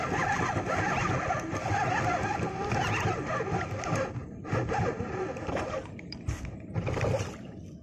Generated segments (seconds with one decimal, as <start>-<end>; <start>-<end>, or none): none